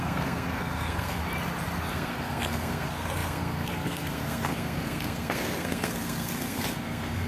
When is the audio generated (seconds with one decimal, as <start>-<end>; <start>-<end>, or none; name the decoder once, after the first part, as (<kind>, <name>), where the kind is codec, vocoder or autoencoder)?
0.0-1.2 (codec, SNAC); 1.9-7.3